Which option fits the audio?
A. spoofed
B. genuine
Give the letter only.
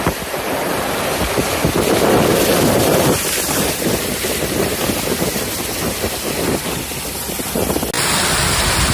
B